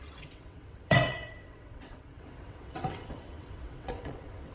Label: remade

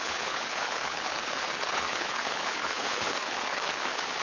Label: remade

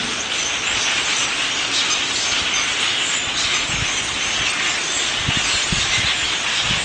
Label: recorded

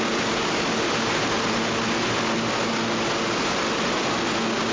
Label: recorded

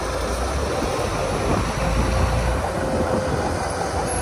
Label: recorded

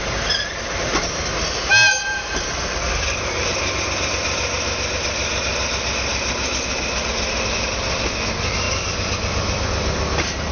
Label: recorded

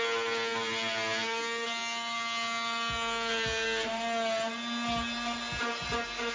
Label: recorded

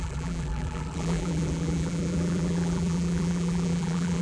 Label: remade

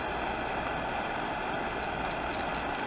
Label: recorded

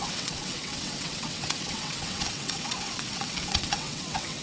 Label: remade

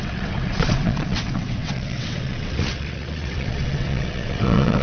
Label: remade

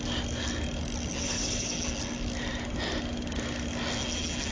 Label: recorded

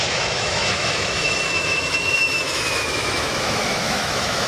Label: remade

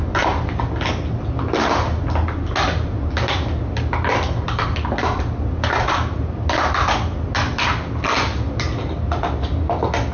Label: recorded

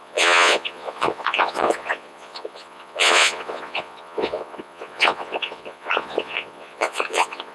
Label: remade